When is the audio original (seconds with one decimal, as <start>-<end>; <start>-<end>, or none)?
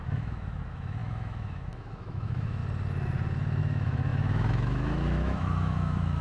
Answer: 2.6-3.6